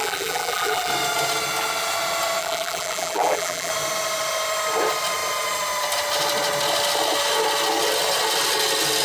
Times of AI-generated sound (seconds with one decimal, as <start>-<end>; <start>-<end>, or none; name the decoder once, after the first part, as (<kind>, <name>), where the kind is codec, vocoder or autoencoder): 0.0-0.9 (vocoder, BigVGAN v2); 2.4-3.7